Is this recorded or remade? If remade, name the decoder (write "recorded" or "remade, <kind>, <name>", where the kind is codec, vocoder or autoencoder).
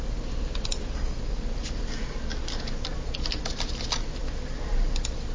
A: recorded